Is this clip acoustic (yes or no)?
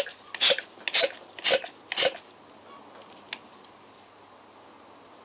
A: yes